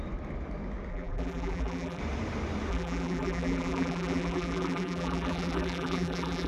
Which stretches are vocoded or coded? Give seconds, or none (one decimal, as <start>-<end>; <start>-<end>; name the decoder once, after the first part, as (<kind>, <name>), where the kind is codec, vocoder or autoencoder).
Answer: 0.9-2.0 (vocoder, BigVGAN v2); 2.7-6.5